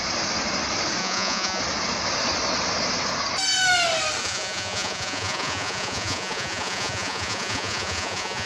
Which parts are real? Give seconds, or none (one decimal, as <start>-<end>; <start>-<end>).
0.0-1.0; 1.6-4.2